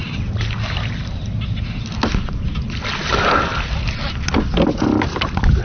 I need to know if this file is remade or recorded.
recorded